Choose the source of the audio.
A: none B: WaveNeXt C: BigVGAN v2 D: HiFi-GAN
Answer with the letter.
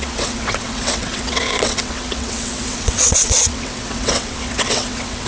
B